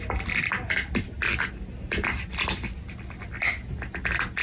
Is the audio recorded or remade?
recorded